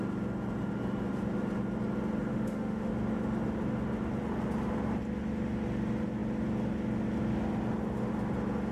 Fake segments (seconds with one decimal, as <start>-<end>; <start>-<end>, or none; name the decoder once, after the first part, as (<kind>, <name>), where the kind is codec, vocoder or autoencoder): 2.3-2.9 (autoencoder, DAC-VAE)